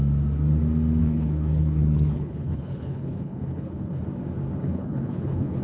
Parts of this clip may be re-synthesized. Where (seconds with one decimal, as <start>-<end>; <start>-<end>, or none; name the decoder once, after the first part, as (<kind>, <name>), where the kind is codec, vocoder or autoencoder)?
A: 1.0-4.0 (codec, HILCodec); 4.6-5.6